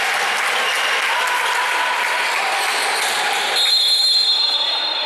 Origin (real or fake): real